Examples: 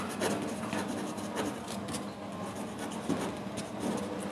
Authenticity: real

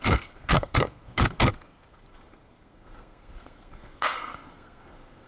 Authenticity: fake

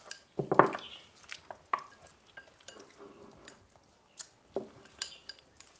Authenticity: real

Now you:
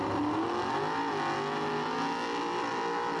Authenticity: real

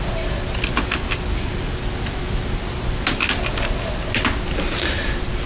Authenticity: real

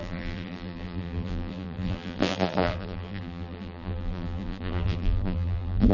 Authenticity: fake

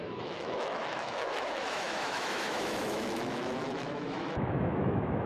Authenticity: fake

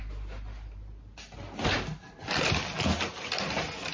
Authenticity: real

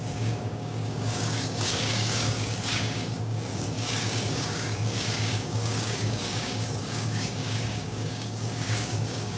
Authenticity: fake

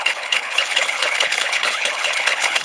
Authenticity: fake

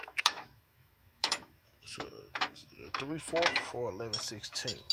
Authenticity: fake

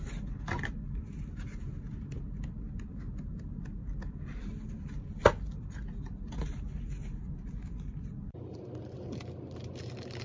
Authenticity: real